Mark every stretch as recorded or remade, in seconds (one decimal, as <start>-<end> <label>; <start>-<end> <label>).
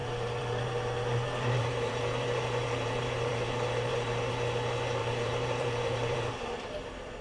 0.0-4.3 remade; 4.3-5.0 recorded; 5.0-6.3 remade; 6.3-7.2 recorded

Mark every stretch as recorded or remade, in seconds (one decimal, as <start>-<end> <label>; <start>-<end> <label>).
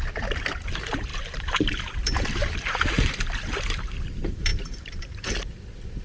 0.0-6.0 remade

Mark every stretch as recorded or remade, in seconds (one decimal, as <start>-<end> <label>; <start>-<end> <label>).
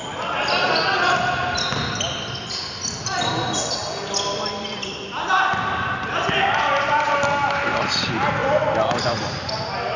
0.0-8.4 recorded; 8.4-9.0 remade; 9.0-10.0 recorded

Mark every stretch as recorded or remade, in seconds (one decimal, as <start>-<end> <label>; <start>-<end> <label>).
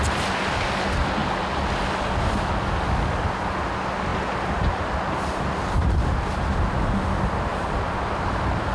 0.0-7.5 recorded; 7.5-8.7 remade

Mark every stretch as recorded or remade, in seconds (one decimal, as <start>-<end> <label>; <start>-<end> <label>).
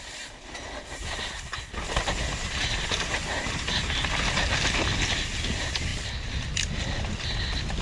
0.0-7.8 recorded